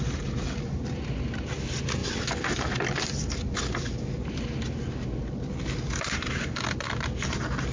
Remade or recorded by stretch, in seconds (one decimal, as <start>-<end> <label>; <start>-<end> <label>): 0.0-7.7 recorded